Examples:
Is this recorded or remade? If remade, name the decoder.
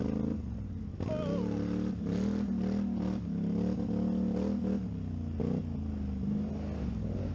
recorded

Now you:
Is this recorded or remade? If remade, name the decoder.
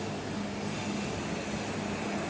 recorded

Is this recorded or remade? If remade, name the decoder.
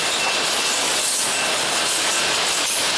recorded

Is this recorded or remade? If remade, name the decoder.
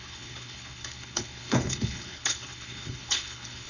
remade, codec, HILCodec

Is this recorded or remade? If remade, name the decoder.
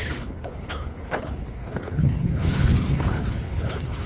remade, codec, HILCodec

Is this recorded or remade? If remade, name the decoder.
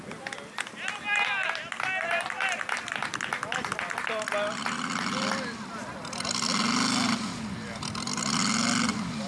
recorded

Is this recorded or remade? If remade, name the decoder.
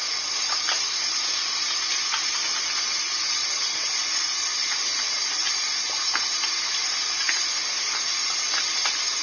recorded